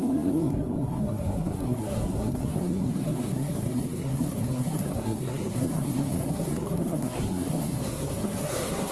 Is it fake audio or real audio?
fake